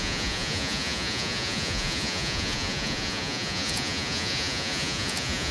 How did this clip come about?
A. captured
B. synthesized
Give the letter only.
B